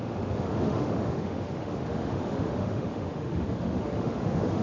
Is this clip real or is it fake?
fake